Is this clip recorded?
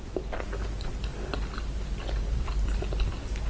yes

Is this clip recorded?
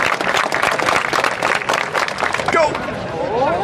yes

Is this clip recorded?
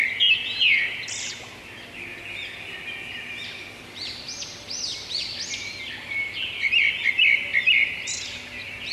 yes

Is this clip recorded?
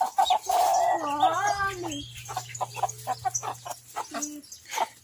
yes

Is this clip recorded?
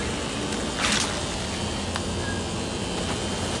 yes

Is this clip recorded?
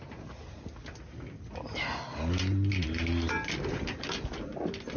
yes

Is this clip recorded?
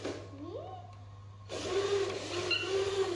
yes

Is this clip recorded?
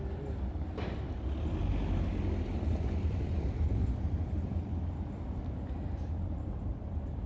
yes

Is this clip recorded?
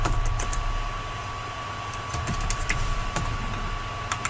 yes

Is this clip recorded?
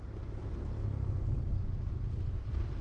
yes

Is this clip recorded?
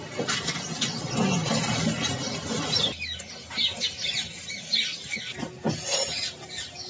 yes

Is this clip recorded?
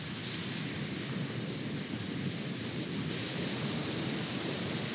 yes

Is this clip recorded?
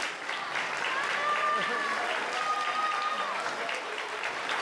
no